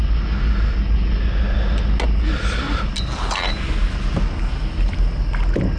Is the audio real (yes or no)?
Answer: yes